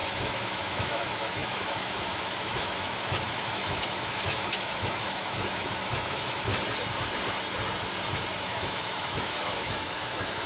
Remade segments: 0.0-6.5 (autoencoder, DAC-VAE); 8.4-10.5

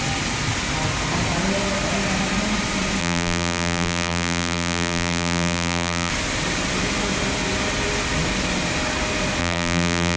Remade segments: 3.0-6.1 (vocoder, BigVGAN v2); 9.4-10.2

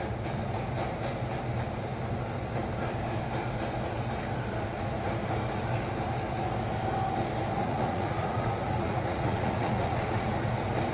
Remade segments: 7.6-10.5 (vocoder, Vocos)

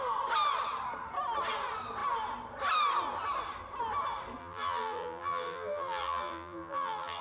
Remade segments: 4.4-7.2 (vocoder, BigVGAN v2)

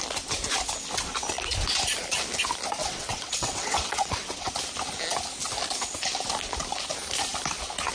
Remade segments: 2.8-4.5 (vocoder, WaveNeXt)